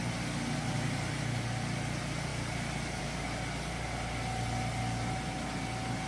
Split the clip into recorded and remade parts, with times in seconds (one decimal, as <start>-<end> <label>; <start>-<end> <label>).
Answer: 0.0-6.1 recorded